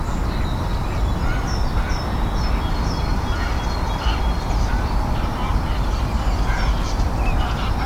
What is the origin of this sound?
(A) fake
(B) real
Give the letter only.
B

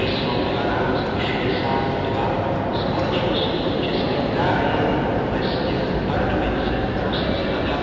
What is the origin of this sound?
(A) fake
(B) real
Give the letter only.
B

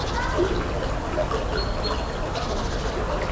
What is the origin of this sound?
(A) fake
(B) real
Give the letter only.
B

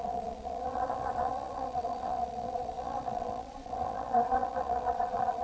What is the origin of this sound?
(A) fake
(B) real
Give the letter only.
A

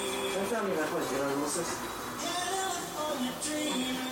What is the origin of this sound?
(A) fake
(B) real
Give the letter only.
B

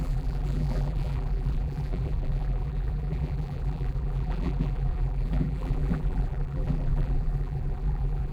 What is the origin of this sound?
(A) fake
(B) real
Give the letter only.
A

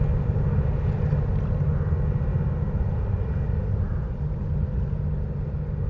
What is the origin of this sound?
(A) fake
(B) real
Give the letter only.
B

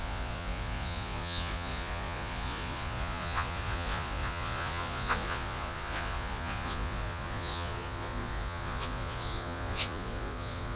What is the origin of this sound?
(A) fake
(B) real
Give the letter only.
A